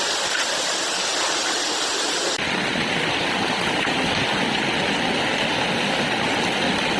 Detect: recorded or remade recorded